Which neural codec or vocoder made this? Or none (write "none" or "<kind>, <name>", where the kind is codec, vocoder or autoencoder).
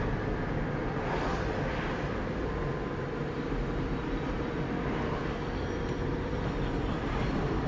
none